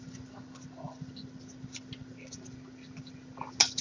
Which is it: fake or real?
real